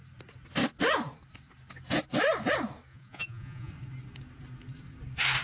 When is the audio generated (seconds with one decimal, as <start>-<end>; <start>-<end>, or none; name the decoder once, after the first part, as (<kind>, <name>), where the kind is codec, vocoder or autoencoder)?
2.9-3.7 (vocoder, Vocos)